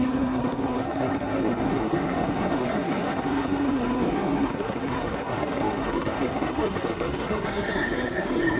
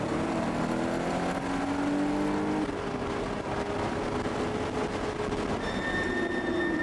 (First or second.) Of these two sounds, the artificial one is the first